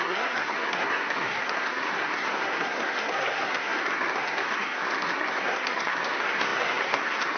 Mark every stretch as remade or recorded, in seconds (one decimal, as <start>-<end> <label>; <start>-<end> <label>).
0.0-7.4 remade